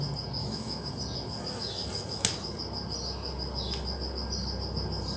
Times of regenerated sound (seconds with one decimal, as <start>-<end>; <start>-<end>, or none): 0.4-0.9